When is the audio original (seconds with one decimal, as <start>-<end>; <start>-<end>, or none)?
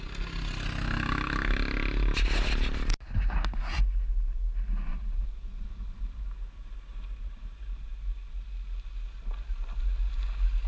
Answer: 0.0-4.9; 6.5-6.9; 7.6-10.7